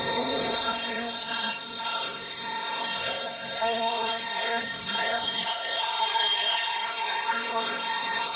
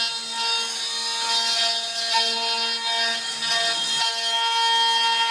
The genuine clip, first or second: second